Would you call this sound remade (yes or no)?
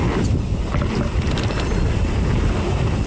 no